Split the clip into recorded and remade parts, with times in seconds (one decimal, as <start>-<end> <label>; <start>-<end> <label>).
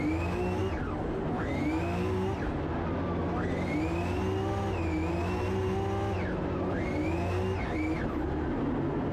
0.0-9.1 recorded